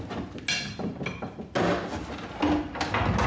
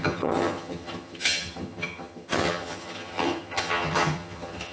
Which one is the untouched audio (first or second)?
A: first